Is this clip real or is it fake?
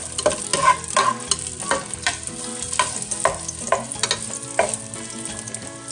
real